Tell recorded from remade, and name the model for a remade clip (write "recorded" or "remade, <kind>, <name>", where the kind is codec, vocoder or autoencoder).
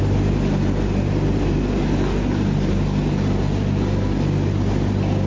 recorded